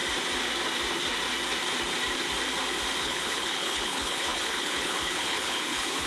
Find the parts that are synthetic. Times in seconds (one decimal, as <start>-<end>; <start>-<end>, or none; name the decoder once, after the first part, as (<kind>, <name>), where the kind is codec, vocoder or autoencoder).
3.0-6.1 (codec, HILCodec)